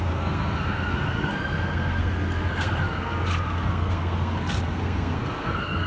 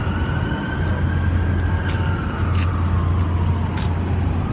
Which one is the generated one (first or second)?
first